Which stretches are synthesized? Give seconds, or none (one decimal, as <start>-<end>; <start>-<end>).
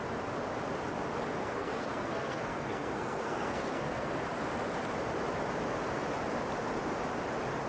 1.4-4.1